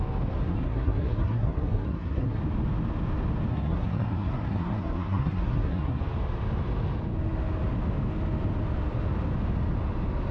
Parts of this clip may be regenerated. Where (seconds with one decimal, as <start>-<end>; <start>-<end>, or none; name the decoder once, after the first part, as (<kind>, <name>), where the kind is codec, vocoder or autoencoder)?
0.4-2.4 (codec, SNAC); 3.5-6.0